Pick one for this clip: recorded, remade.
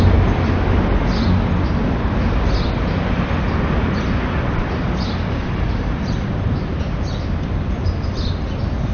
recorded